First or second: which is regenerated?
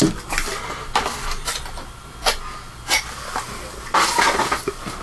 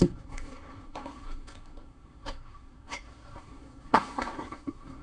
second